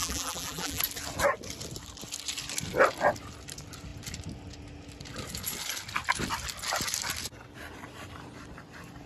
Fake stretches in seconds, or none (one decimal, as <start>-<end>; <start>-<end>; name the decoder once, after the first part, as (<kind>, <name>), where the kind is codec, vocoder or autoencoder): 0.0-0.8 (vocoder, BigVGAN v2)